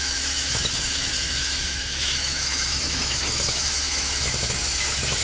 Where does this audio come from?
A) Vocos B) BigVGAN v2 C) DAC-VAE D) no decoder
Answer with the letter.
C